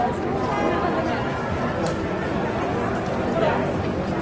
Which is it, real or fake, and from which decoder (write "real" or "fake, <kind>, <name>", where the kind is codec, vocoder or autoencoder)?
real